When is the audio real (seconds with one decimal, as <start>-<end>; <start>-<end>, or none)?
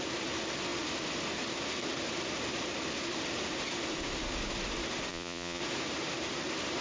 0.0-5.1; 5.6-6.8